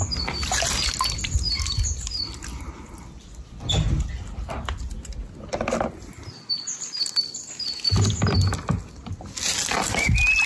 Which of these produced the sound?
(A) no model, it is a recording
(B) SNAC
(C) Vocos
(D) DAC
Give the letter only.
A